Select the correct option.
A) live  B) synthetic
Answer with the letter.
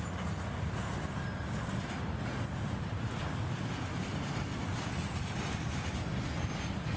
A